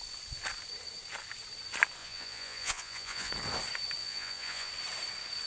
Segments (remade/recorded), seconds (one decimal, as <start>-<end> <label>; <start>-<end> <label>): 0.0-2.0 recorded; 2.0-3.3 remade; 3.3-4.0 recorded; 4.0-4.7 remade; 4.7-5.5 recorded